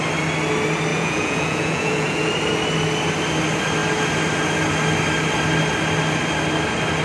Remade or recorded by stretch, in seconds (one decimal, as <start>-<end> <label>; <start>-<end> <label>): 0.0-0.9 recorded; 0.9-2.3 remade; 2.3-7.0 recorded